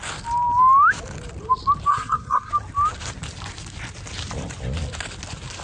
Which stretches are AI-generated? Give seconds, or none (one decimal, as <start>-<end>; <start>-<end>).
1.9-2.5